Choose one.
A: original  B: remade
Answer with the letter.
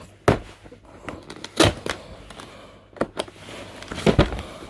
A